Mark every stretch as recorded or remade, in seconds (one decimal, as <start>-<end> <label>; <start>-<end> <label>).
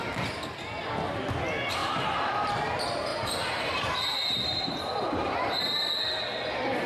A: 0.0-1.8 recorded; 1.8-2.5 remade; 2.5-3.1 recorded; 3.1-5.9 remade; 5.9-6.9 recorded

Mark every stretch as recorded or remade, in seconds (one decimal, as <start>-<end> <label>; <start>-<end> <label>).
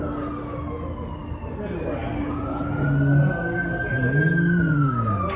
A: 0.0-5.4 recorded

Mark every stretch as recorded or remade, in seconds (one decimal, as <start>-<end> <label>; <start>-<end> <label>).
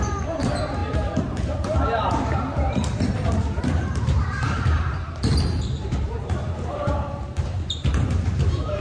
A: 0.0-8.8 remade